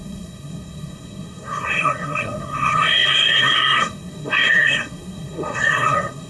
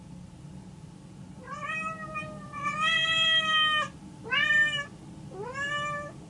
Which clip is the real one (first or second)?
second